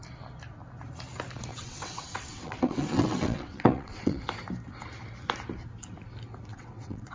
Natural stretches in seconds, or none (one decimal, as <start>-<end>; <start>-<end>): 0.0-1.5; 4.2-6.5